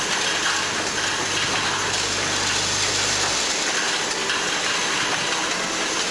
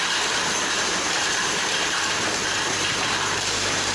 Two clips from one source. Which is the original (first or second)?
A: first